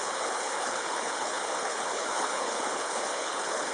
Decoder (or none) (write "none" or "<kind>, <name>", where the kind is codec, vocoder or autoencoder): codec, HILCodec